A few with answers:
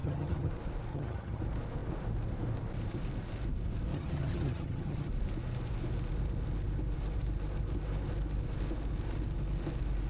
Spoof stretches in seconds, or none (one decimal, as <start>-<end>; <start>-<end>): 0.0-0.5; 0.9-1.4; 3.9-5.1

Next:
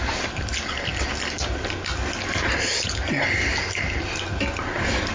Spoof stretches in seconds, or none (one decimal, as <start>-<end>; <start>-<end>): none

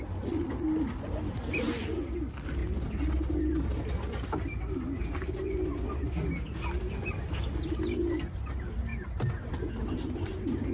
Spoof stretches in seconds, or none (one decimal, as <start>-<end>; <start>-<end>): none